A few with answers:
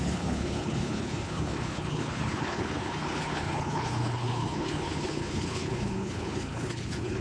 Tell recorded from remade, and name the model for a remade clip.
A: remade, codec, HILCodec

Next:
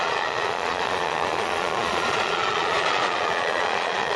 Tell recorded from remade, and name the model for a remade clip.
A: remade, vocoder, Vocos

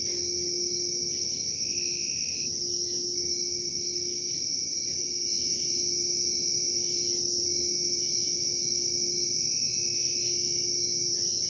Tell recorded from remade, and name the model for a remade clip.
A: recorded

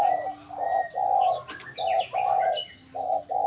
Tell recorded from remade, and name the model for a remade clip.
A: recorded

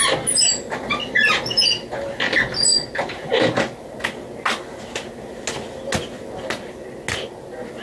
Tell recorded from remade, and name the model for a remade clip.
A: recorded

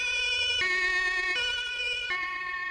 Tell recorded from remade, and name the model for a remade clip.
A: recorded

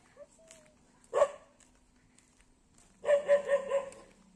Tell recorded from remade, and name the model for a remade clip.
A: recorded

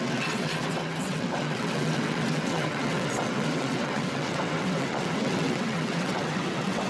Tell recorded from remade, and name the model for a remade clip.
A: remade, vocoder, WaveNeXt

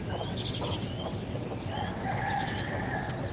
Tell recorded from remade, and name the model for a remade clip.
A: remade, vocoder, WaveNeXt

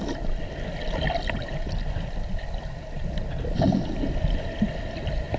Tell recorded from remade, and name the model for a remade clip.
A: recorded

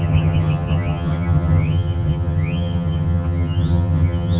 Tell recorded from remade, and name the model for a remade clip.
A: remade, vocoder, HiFi-GAN